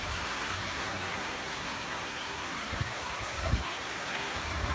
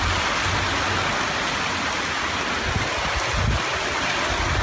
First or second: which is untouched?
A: second